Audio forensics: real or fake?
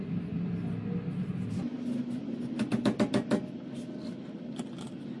real